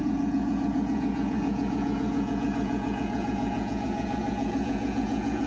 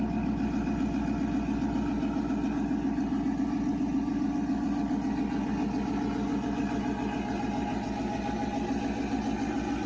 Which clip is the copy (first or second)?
first